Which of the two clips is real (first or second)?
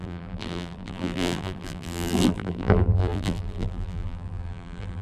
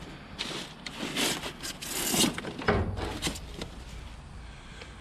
second